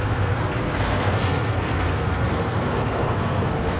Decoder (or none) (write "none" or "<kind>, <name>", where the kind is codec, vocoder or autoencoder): codec, SNAC